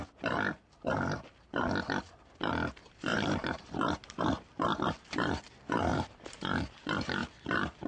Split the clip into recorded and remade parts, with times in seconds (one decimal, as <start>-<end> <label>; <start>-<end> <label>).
0.0-3.1 recorded; 3.1-4.2 remade; 4.2-5.9 recorded; 5.9-6.6 remade; 6.6-7.9 recorded